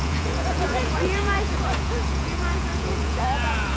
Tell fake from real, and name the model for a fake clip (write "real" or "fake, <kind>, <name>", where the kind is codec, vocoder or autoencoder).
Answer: fake, vocoder, Vocos